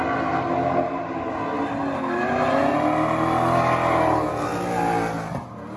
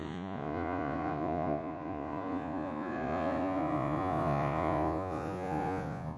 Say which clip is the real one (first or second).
first